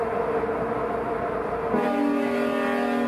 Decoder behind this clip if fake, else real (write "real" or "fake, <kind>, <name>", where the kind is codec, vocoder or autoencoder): real